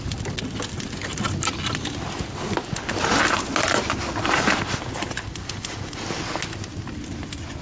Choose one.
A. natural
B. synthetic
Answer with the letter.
A